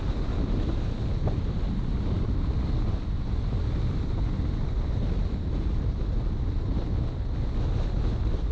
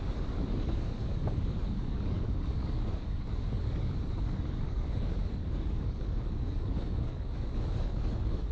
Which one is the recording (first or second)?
first